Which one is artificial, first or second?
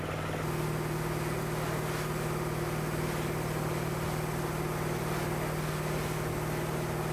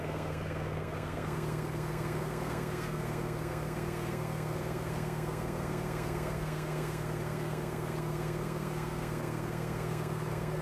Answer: second